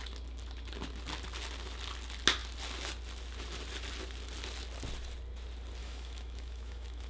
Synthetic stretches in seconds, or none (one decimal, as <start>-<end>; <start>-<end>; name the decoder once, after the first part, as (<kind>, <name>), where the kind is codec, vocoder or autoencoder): 5.8-7.1 (autoencoder, DAC-VAE)

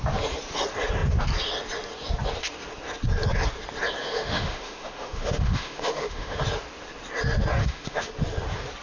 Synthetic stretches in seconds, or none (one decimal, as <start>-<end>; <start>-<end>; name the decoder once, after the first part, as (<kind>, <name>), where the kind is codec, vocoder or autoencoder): 4.0-6.4 (autoencoder, DAC-VAE); 7.6-8.1

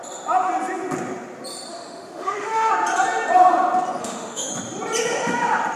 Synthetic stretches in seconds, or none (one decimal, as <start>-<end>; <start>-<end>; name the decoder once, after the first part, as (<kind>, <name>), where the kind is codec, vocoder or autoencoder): 1.7-2.7 (autoencoder, DAC-VAE); 4.0-4.5

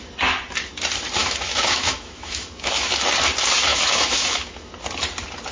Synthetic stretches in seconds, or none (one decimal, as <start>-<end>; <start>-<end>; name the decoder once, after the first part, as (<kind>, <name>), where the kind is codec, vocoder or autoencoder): 1.2-2.9 (autoencoder, DAC-VAE); 3.7-4.7

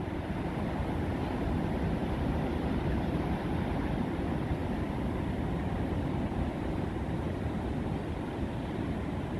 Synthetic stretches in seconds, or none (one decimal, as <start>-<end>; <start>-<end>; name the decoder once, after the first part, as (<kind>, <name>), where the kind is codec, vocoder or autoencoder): none